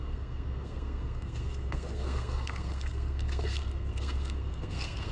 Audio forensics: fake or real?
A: fake